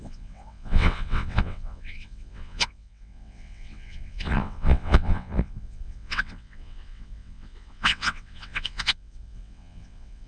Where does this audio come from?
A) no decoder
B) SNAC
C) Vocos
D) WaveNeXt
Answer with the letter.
D